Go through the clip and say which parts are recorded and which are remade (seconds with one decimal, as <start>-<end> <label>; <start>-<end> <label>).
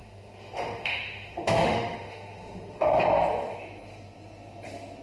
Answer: 0.0-3.0 remade; 3.0-5.0 recorded